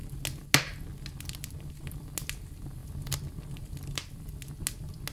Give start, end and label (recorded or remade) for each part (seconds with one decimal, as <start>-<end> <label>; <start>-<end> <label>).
0.0-5.1 recorded